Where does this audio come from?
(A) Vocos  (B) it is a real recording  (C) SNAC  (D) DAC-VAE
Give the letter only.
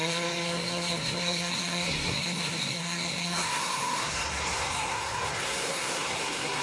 C